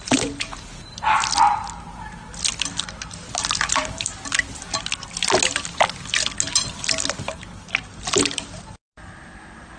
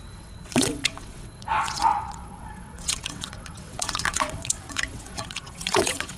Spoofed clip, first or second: second